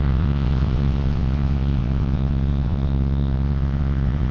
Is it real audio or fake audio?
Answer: fake